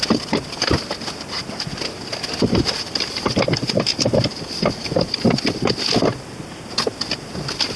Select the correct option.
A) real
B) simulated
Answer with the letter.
B